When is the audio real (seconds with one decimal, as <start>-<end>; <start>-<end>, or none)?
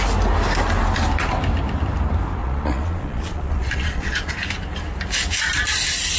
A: 0.0-2.4; 4.3-6.2